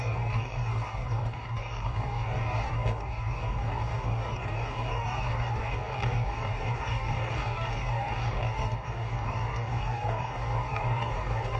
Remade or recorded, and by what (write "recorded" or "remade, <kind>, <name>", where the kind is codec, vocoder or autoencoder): remade, codec, DAC